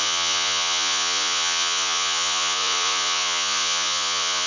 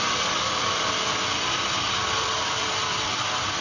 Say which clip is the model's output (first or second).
first